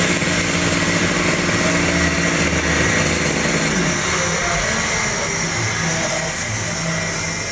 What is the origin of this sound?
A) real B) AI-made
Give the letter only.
A